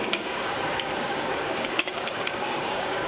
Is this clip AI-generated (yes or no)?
yes